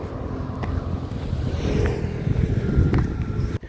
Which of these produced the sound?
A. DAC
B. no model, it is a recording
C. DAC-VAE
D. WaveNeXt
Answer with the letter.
B